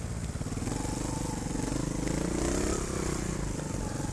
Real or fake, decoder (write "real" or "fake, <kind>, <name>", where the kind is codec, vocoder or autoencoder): real